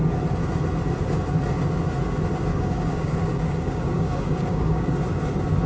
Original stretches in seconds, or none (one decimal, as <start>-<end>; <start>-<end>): 0.0-2.5; 4.9-5.7